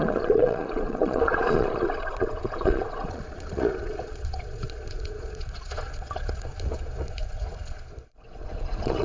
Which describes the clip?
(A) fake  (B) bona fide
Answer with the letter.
A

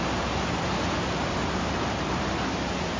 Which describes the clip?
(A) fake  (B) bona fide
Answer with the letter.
A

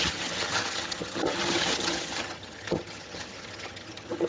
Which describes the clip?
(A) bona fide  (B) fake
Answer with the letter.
B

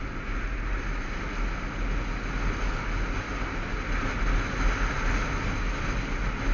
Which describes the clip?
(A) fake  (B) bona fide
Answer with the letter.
B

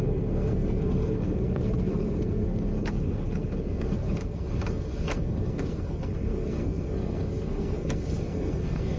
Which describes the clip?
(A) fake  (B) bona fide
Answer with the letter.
A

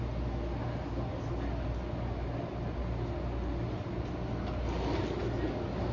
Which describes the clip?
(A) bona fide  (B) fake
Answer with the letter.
A